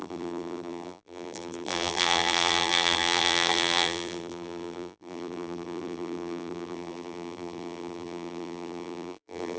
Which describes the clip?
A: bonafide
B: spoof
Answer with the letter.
B